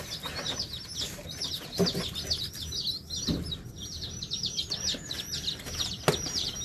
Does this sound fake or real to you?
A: real